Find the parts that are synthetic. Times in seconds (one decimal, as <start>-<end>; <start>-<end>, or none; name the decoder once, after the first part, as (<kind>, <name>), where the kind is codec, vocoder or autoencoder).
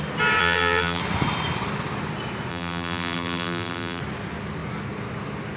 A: 0.4-1.0 (vocoder, BigVGAN v2); 2.5-4.0